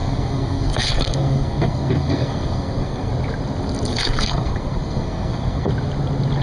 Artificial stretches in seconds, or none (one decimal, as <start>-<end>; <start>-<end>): 0.0-3.1; 3.9-5.7